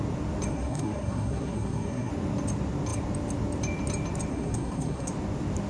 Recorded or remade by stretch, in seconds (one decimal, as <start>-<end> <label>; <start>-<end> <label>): 0.0-0.5 recorded; 0.5-2.1 remade; 2.1-4.3 recorded; 4.3-5.1 remade; 5.1-5.7 recorded